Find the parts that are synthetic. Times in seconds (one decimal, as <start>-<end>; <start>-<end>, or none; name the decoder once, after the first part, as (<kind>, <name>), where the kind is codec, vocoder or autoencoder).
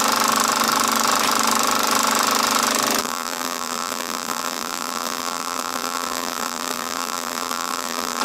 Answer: 3.0-8.2 (vocoder, BigVGAN v2)